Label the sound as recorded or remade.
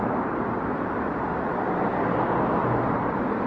remade